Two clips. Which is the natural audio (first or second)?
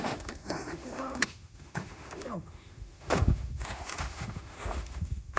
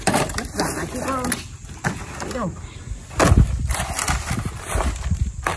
second